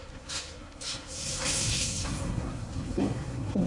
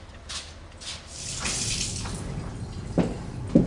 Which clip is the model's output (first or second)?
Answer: first